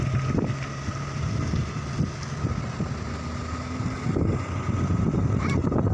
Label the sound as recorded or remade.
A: recorded